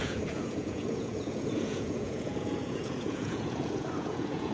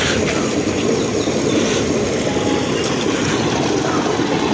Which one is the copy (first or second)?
first